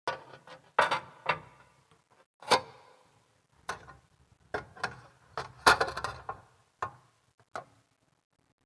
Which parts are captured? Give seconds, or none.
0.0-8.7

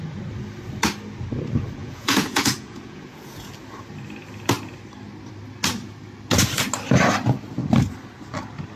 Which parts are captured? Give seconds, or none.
0.0-1.8; 3.5-8.8

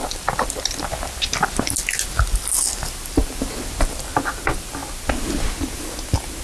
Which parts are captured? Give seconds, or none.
0.0-6.4